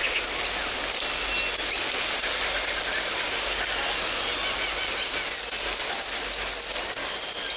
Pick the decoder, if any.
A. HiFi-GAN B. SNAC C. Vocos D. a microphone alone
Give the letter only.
D